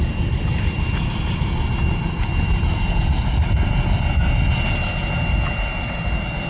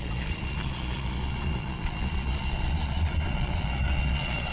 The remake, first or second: second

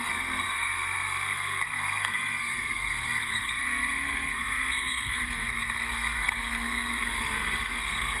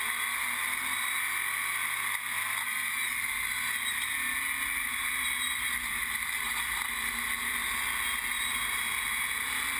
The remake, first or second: first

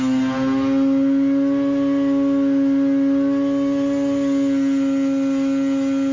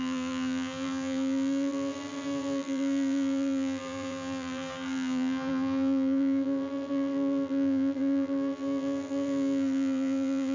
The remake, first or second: second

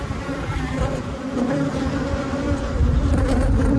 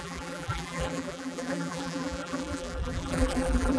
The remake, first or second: second